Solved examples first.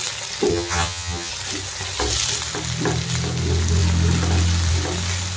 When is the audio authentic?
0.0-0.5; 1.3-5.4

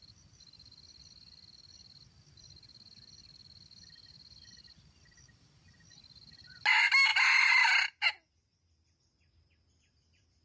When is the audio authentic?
0.0-10.4

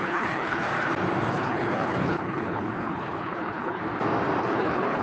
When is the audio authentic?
0.7-1.3; 3.8-4.4

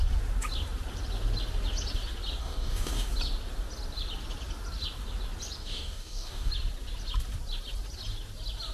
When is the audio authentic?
0.0-2.4; 3.1-5.6; 6.5-8.7